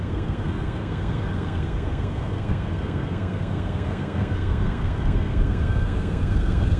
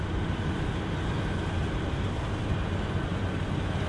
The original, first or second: second